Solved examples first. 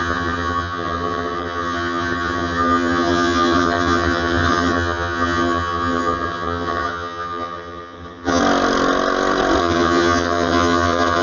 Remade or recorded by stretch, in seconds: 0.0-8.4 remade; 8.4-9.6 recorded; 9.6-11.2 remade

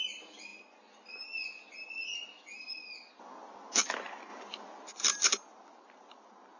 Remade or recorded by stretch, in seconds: 0.0-6.6 recorded

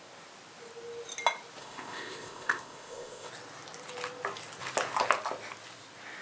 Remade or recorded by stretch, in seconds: 0.0-1.6 recorded; 1.6-3.3 remade; 3.3-6.2 recorded

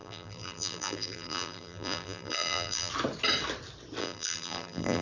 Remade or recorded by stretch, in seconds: 0.0-2.9 remade; 2.9-4.0 recorded; 4.0-5.0 remade

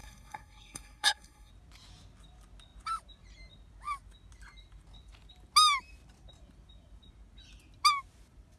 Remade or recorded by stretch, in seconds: 0.0-1.5 remade; 1.5-8.6 recorded

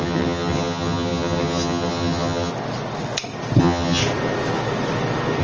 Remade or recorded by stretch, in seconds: 0.0-2.5 remade; 2.5-3.6 recorded; 3.6-4.0 remade; 4.0-5.4 recorded

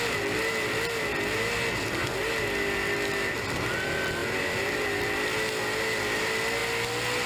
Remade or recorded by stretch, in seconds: 0.0-7.3 recorded